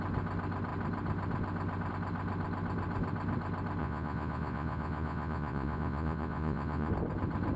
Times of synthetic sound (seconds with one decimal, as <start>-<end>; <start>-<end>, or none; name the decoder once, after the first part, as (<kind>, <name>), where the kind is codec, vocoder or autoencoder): 3.8-6.9 (vocoder, Vocos)